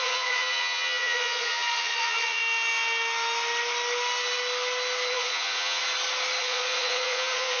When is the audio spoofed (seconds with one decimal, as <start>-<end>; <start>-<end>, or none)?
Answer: 0.0-2.4; 5.1-5.8; 6.4-7.6